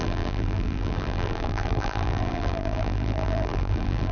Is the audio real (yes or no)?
no